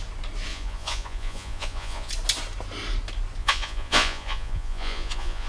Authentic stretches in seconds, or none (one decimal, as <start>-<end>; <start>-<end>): 0.0-0.5; 2.1-3.4